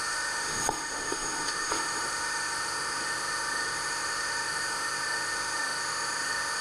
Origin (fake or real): fake